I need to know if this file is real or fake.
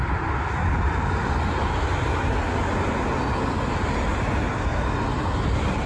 real